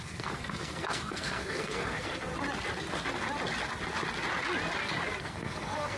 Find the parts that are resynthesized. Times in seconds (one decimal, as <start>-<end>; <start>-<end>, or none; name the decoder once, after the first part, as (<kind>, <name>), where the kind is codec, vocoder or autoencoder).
0.0-2.3 (codec, SNAC); 5.2-6.0